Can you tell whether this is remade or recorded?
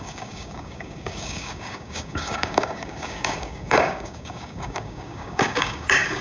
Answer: remade